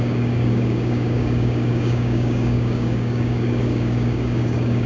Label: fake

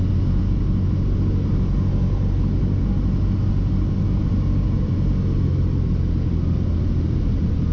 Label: real